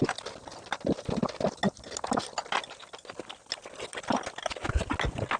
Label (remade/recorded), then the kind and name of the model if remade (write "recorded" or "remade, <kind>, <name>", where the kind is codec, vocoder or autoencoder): recorded